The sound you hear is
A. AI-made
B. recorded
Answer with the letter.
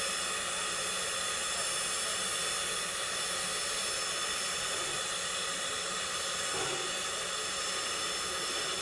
B